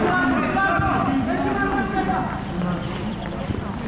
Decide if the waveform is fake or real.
real